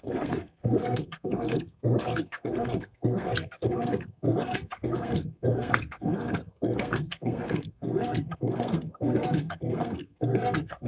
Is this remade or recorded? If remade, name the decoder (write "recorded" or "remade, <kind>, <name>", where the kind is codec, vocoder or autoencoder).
remade, codec, SNAC